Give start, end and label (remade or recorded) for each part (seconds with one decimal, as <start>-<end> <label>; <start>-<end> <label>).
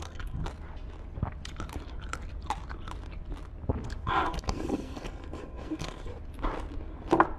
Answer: 0.0-0.4 remade; 0.4-4.0 recorded; 4.0-6.1 remade; 6.1-7.4 recorded